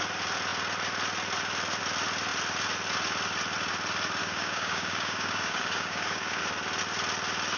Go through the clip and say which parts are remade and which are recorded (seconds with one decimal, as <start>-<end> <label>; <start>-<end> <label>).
0.0-4.2 recorded; 4.2-6.4 remade; 6.4-7.6 recorded